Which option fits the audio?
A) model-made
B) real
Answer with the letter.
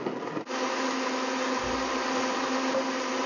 B